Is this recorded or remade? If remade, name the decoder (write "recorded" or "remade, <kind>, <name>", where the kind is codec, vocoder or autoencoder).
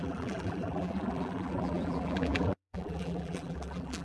remade, vocoder, BigVGAN v2